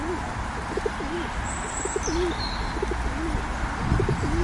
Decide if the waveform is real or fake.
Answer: real